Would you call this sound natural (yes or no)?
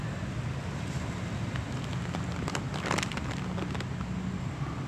yes